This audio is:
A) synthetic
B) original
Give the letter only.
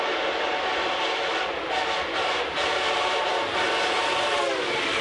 B